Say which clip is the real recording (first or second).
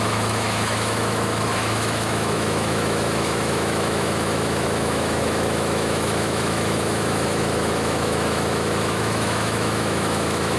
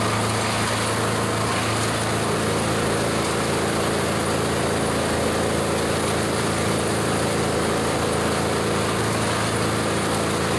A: second